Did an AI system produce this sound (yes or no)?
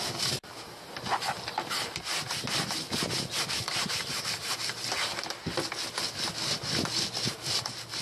no